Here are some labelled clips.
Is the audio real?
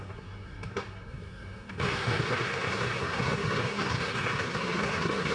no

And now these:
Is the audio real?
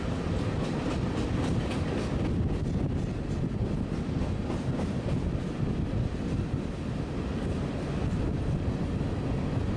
yes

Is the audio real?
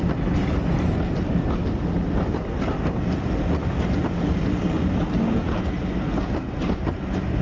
yes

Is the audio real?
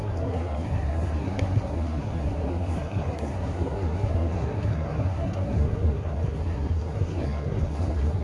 no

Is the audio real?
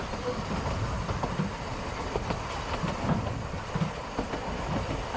yes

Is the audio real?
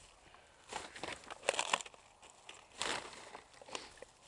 yes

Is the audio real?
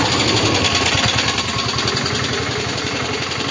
yes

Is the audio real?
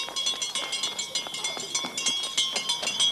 yes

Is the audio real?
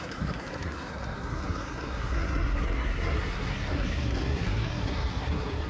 no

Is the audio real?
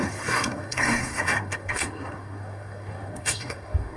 no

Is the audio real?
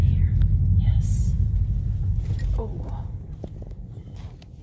yes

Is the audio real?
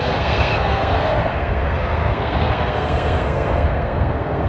no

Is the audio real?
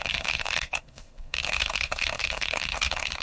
no